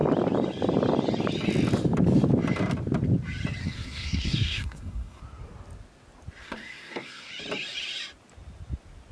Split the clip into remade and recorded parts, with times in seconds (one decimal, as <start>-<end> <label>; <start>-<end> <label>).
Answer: 0.0-3.6 recorded; 3.6-5.2 remade; 5.2-6.4 recorded; 6.4-7.3 remade; 7.3-9.1 recorded

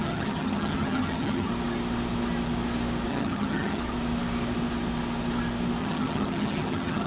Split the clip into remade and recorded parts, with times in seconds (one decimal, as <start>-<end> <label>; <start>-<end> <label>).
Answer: 0.0-1.5 remade; 1.5-3.1 recorded; 3.1-3.8 remade; 3.8-5.8 recorded; 5.8-7.1 remade